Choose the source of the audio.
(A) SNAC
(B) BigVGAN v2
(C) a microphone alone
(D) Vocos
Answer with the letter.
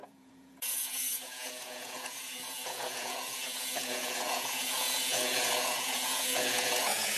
D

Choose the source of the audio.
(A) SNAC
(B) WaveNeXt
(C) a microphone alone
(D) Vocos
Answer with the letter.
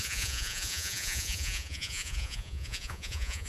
D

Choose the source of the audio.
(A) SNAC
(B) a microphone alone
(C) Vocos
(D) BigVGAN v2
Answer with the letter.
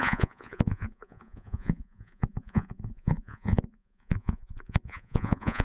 C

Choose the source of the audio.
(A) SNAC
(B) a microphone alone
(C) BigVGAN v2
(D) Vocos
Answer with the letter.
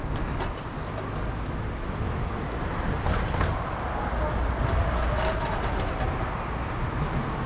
B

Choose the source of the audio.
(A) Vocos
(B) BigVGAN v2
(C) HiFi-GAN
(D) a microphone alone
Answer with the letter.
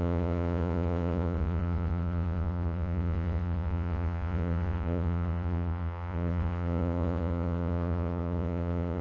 A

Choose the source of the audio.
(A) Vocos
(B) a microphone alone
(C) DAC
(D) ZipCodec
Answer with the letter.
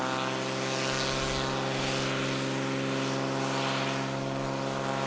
B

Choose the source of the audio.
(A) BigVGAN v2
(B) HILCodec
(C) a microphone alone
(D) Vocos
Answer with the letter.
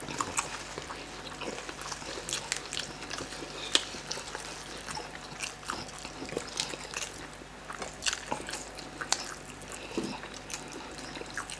C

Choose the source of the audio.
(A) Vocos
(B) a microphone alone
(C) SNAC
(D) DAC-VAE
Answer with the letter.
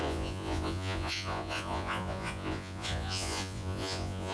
A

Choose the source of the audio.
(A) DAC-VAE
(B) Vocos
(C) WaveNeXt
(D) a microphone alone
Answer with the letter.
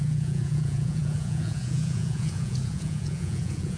B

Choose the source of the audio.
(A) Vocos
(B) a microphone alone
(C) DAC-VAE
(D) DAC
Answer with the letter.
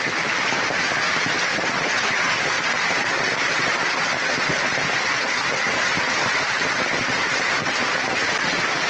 B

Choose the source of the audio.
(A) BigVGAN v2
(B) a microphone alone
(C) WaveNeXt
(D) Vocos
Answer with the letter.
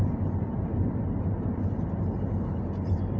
B